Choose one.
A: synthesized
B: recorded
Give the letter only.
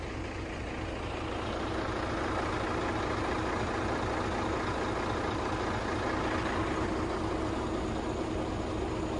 B